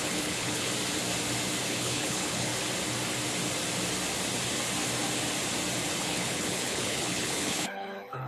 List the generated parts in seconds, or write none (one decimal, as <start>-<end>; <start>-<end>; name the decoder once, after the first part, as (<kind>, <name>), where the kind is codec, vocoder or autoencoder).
0.0-0.7 (codec, HILCodec); 1.7-2.5; 6.0-8.3